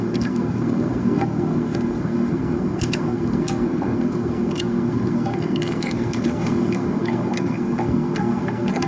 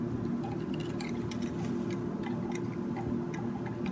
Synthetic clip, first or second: first